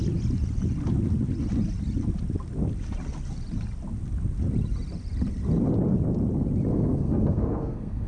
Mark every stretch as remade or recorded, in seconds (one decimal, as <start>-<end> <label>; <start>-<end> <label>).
0.0-6.7 recorded; 6.7-8.1 remade